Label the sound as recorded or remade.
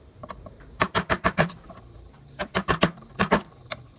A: remade